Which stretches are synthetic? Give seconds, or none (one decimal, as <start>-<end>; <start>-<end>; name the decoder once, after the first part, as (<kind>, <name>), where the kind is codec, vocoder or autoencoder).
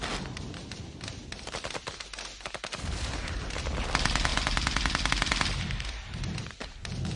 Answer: none